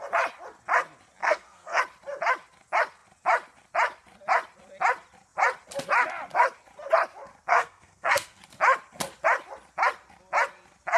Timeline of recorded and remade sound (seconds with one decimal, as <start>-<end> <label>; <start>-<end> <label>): 0.0-1.2 recorded; 1.2-1.8 remade; 1.8-7.5 recorded; 7.5-8.4 remade; 8.4-11.0 recorded